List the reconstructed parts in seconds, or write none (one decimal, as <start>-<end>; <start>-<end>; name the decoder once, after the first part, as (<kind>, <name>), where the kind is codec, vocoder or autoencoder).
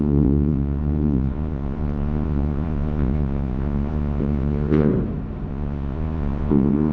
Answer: 0.0-4.9 (vocoder, Vocos); 5.5-6.9